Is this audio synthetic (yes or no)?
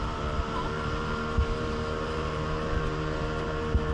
yes